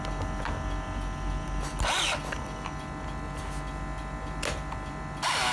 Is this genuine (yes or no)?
yes